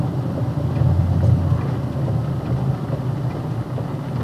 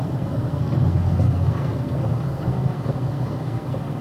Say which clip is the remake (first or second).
second